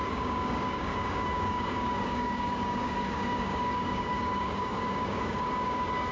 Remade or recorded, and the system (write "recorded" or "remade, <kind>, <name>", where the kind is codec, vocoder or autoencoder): remade, codec, DAC